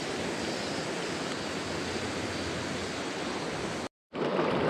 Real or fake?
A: real